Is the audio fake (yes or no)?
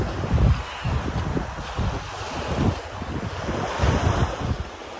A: no